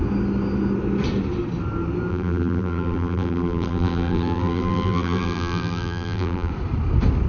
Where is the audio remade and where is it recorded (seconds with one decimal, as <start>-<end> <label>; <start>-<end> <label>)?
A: 0.0-2.1 recorded; 2.1-6.5 remade; 6.5-7.3 recorded